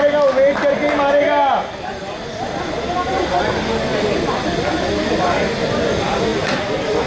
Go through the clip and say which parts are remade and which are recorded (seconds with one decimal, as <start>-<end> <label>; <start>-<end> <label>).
0.0-7.1 recorded